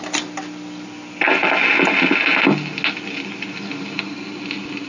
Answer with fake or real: real